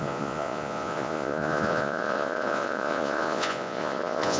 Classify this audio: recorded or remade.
remade